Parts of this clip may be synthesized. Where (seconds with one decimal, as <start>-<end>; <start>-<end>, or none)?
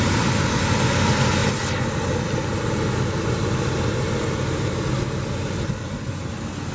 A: none